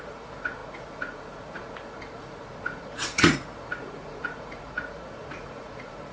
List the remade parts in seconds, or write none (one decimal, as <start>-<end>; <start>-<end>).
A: 0.0-6.1